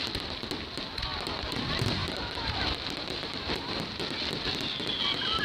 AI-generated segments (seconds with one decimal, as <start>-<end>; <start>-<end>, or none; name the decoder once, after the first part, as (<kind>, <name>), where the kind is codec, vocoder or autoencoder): 2.0-4.0 (vocoder, BigVGAN v2)